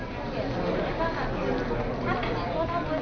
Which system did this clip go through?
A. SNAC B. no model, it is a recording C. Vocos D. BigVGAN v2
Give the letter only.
B